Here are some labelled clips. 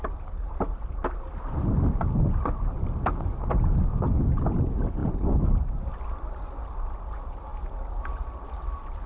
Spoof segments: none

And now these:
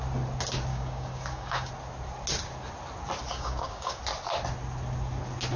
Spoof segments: 0.7-1.7 (codec, DAC); 3.3-4.0

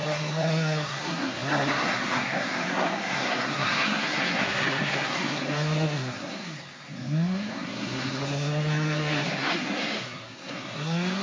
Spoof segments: 0.0-11.2 (codec, SNAC)

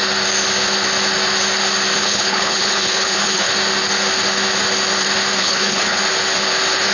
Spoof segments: 2.0-3.5 (codec, HILCodec); 5.4-6.0

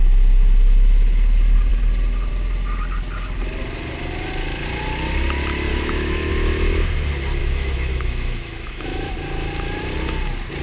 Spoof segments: 5.7-6.3 (autoencoder, DAC-VAE); 7.4-9.1

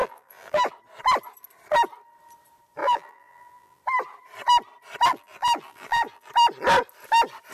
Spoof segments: 0.0-0.7 (vocoder, BigVGAN v2); 2.8-3.8; 5.1-6.3